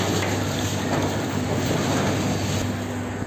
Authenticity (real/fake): real